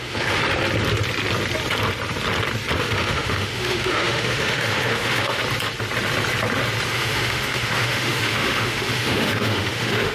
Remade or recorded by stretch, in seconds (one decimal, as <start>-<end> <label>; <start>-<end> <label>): 0.0-0.4 remade; 0.4-2.8 recorded; 2.8-5.4 remade; 5.4-6.9 recorded; 6.9-10.1 remade